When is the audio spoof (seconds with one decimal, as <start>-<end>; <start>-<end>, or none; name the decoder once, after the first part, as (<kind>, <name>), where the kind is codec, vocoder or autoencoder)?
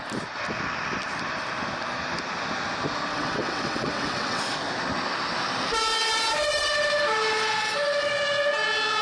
3.1-4.4 (vocoder, WaveNeXt)